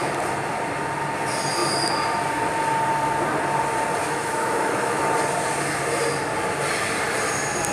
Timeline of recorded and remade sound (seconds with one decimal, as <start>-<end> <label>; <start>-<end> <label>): 0.0-4.0 recorded; 4.0-5.0 remade; 5.0-7.7 recorded